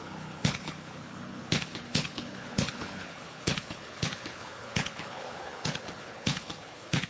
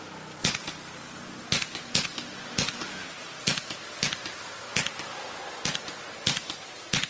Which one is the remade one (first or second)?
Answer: first